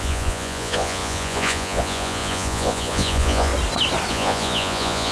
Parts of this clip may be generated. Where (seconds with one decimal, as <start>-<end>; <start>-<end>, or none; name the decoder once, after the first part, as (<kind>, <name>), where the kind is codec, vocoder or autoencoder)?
0.0-3.5 (vocoder, Vocos); 4.1-5.1